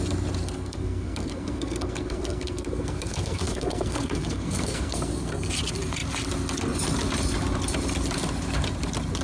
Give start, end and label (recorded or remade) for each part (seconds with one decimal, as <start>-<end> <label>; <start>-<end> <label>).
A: 0.0-0.4 recorded; 0.4-5.5 remade; 5.5-9.2 recorded